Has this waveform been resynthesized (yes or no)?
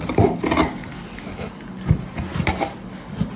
no